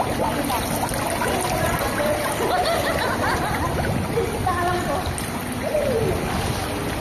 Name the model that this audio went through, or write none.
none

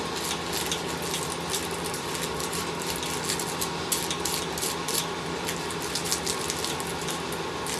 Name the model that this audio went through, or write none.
none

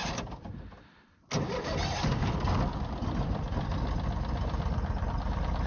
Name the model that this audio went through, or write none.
none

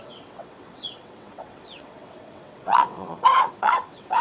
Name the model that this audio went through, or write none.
vocoder, WaveNeXt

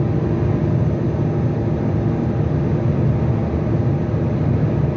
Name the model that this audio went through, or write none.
none